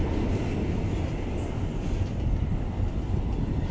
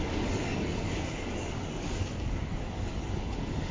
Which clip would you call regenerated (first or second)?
second